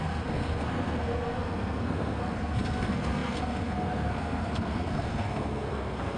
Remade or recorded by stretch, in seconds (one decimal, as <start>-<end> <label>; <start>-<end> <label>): 0.0-6.2 remade